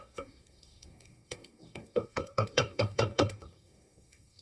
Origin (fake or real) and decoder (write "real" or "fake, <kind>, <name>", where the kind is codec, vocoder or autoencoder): fake, codec, SNAC